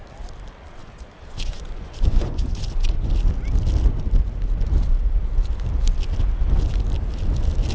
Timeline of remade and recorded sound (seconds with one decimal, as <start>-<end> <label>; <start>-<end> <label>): 0.0-0.8 recorded; 0.8-3.1 remade; 3.1-7.7 recorded